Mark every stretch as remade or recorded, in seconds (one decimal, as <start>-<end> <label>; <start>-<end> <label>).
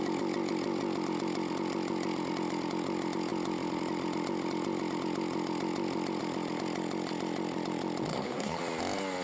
0.0-8.1 recorded; 8.1-8.6 remade; 8.6-9.2 recorded